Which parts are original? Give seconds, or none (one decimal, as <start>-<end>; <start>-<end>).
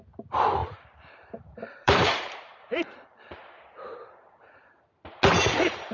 0.0-0.6; 3.5-5.9